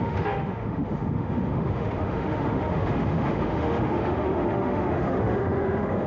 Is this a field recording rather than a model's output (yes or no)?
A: no